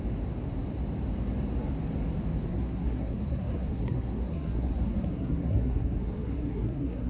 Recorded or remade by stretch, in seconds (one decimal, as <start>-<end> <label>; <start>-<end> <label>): 0.0-2.5 recorded; 2.5-7.1 remade